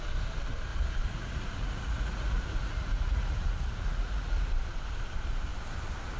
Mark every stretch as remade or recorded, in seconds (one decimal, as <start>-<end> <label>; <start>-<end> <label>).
0.0-0.7 recorded; 0.7-4.4 remade; 4.4-6.2 recorded